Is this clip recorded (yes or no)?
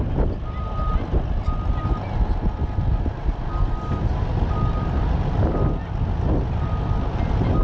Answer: yes